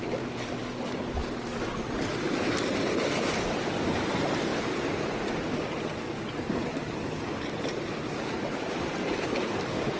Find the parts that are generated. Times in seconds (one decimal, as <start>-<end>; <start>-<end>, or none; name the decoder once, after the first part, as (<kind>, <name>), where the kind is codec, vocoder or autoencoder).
none